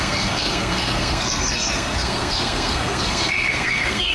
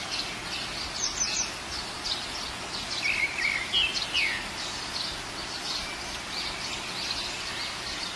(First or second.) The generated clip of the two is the first